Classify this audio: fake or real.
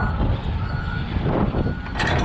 real